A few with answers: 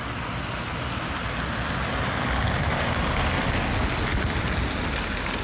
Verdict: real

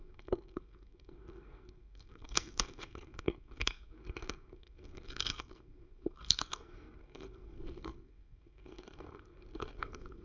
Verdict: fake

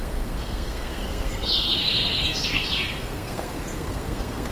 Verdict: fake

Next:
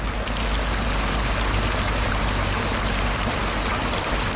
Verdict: real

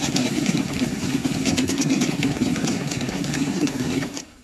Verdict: fake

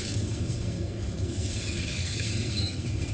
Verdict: fake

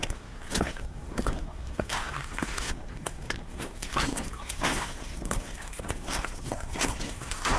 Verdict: fake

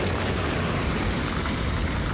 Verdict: real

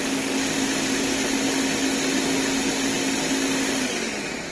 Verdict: real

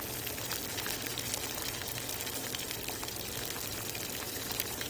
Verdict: real